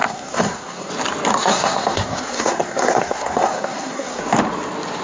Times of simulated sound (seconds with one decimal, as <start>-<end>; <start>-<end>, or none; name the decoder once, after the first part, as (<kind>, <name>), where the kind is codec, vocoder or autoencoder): 0.0-0.9 (codec, SNAC); 1.3-4.2